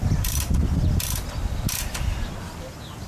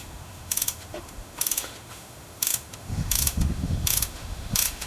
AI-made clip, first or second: second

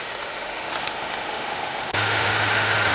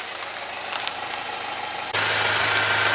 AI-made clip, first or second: first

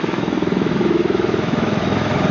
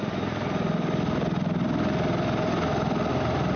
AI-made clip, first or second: first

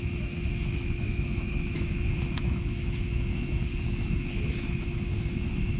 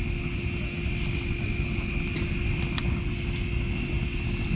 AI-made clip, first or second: first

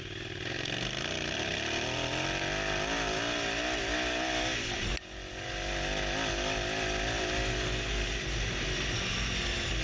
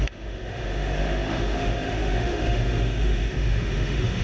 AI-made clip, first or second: second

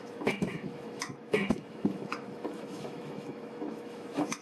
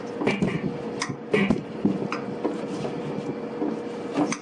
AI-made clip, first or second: first